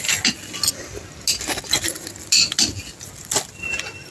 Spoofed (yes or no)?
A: no